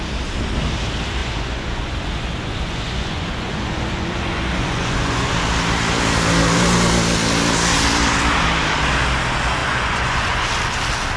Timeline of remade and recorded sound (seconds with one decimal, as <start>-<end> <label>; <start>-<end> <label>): 0.0-1.2 recorded; 1.2-5.3 remade; 5.3-9.6 recorded; 9.6-10.5 remade; 10.5-11.2 recorded